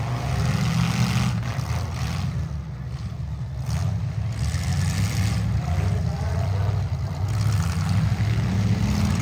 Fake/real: real